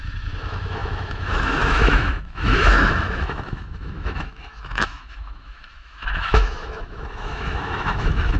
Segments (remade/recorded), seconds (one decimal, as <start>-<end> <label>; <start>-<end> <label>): 0.0-8.4 remade